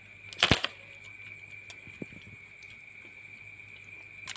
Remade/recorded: recorded